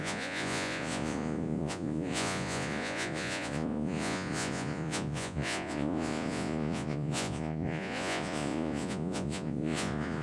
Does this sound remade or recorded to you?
remade